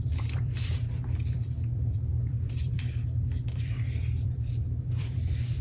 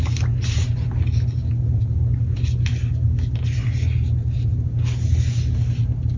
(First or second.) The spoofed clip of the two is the first